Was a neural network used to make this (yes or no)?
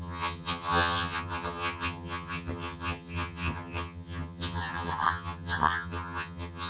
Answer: yes